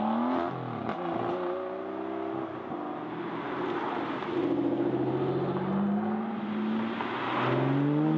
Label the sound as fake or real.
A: real